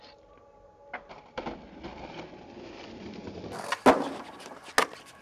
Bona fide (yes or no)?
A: yes